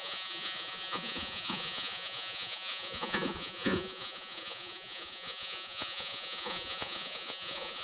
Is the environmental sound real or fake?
fake